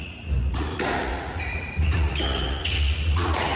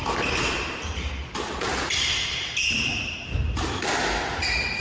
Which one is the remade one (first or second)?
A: first